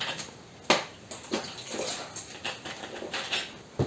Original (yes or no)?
yes